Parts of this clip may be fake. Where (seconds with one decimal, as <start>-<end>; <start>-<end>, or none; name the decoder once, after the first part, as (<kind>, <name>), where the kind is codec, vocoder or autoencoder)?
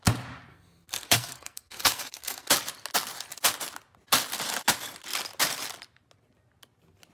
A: 0.5-2.5 (codec, SNAC)